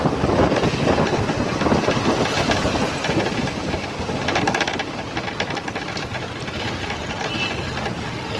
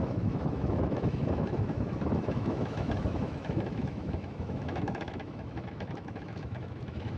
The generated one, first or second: second